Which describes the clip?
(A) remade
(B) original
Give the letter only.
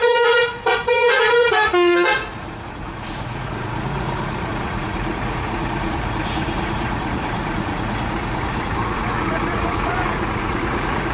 A